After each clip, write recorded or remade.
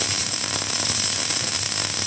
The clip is remade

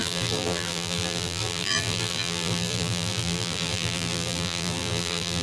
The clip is remade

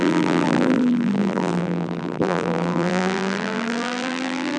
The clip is remade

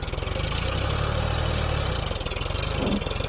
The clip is recorded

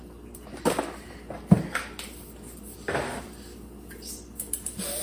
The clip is recorded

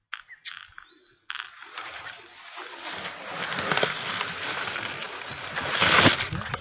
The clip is recorded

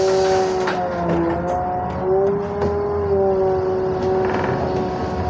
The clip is recorded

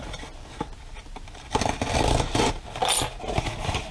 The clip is recorded